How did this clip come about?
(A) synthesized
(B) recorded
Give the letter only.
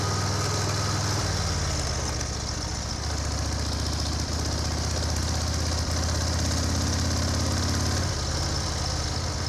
B